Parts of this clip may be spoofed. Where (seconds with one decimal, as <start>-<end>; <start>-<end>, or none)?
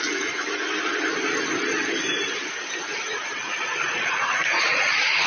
3.4-5.3